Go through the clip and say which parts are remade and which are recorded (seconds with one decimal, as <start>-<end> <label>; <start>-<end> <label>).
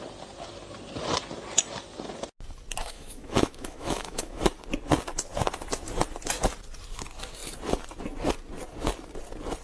0.0-2.8 recorded; 2.8-4.4 remade; 4.4-9.6 recorded